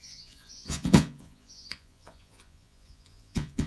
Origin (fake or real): fake